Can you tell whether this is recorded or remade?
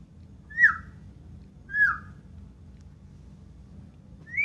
recorded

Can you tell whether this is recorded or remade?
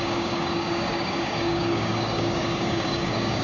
remade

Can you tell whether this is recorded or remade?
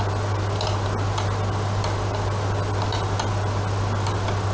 recorded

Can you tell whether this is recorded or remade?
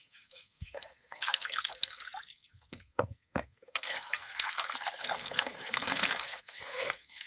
remade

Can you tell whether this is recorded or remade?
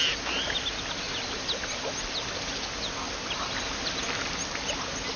recorded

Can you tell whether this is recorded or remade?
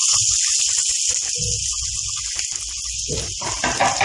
recorded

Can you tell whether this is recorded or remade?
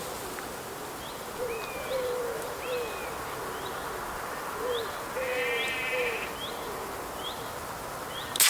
recorded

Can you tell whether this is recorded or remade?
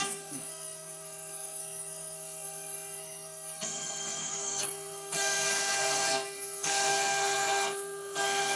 remade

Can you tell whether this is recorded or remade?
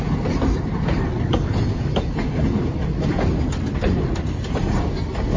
recorded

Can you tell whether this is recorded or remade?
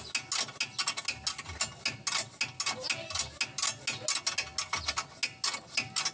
recorded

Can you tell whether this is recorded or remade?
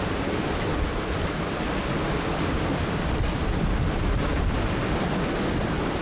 recorded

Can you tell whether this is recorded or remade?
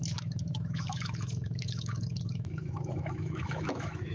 remade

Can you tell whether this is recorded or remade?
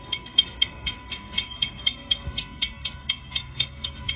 remade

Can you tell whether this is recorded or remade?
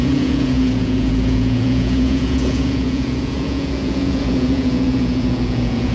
remade